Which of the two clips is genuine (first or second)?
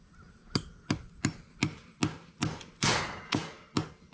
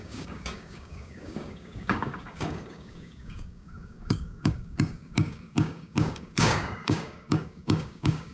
first